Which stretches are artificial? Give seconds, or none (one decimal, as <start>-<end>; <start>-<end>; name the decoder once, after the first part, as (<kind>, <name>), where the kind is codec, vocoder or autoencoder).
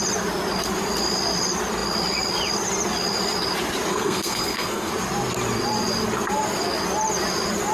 3.9-4.9 (codec, SNAC)